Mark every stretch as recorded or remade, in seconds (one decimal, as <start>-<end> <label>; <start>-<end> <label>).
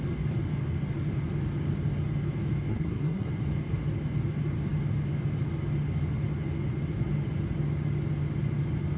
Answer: 0.0-2.7 recorded; 2.7-3.3 remade; 3.3-9.0 recorded